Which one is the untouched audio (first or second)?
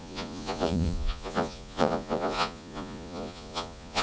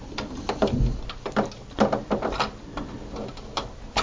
second